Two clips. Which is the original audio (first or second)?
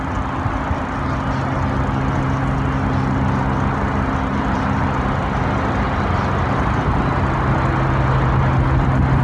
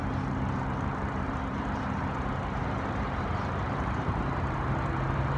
first